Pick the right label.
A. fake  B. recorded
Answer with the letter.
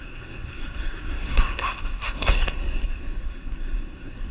A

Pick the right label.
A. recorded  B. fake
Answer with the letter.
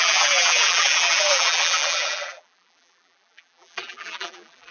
B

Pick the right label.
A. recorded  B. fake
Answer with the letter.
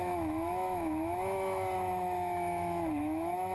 B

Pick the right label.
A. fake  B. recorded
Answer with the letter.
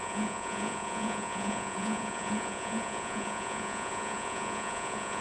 A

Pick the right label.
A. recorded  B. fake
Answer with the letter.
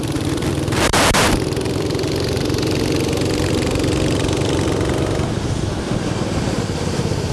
B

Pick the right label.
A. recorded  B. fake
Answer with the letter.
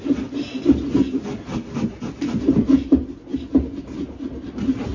A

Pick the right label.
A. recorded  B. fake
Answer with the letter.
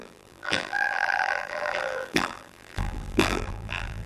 B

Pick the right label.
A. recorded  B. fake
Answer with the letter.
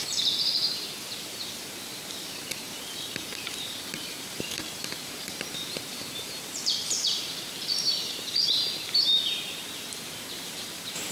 B